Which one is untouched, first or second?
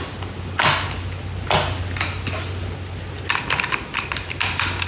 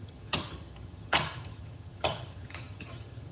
first